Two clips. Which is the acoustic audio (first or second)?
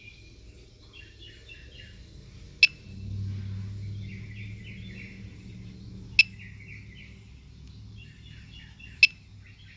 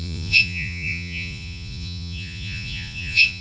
first